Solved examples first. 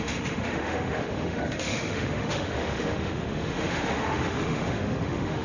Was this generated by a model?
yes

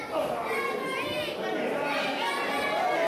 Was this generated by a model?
no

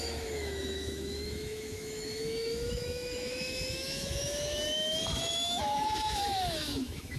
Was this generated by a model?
yes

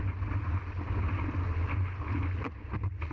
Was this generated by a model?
no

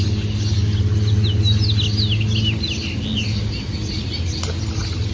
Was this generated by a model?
no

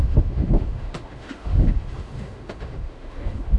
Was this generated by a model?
yes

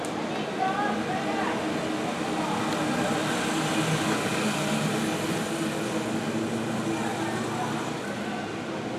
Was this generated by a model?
no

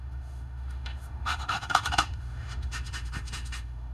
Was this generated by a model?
yes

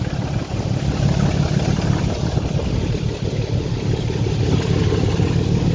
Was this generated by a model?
no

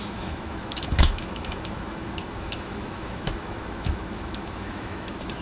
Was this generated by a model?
yes